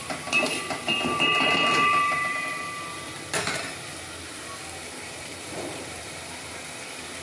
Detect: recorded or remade remade